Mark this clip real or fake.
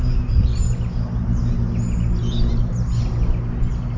real